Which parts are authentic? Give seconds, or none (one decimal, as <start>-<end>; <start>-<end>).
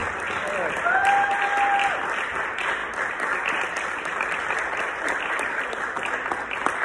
0.0-2.8; 5.7-6.8